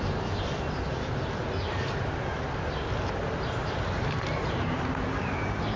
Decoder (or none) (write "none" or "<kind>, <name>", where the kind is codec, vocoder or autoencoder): none